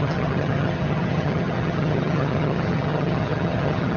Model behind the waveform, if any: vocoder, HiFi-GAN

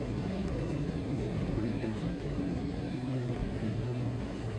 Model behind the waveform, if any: codec, SNAC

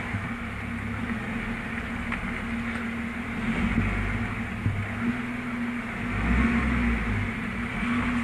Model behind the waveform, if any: none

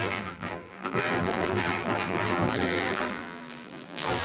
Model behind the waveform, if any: vocoder, BigVGAN v2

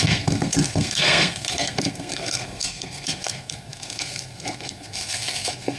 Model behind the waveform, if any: codec, SNAC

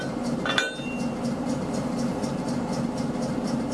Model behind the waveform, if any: none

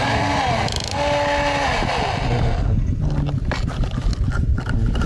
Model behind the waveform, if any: none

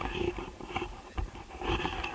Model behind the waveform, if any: none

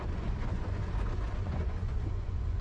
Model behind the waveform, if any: vocoder, Vocos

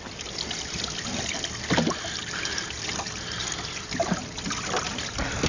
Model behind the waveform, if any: none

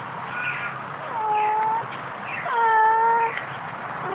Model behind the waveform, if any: none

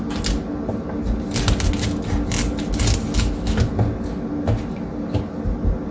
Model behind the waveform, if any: none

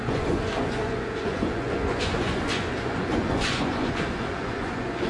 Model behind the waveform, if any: vocoder, Vocos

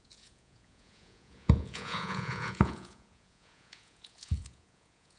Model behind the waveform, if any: vocoder, Vocos